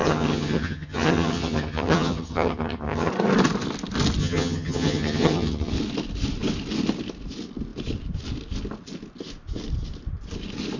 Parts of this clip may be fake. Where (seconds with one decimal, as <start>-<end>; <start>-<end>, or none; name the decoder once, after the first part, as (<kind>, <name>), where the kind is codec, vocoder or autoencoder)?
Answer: 0.0-3.1 (vocoder, HiFi-GAN); 4.2-5.7